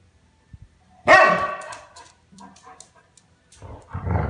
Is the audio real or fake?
real